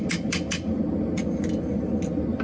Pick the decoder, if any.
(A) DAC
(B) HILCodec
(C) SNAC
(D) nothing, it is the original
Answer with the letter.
D